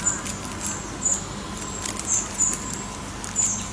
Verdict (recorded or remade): recorded